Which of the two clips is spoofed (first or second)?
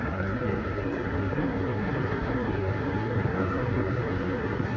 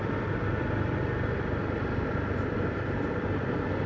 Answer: first